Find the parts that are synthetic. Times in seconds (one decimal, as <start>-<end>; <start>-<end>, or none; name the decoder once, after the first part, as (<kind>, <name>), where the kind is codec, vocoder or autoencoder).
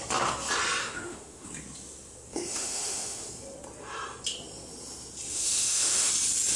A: 0.8-1.5 (autoencoder, DAC-VAE); 2.3-3.3; 5.3-6.1